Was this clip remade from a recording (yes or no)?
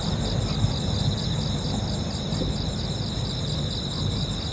no